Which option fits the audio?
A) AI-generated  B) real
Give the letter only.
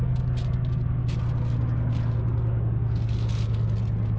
B